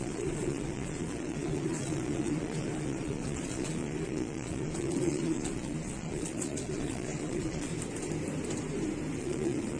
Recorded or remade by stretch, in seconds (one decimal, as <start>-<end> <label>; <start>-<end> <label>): 0.0-7.7 remade; 7.7-9.2 recorded; 9.2-9.8 remade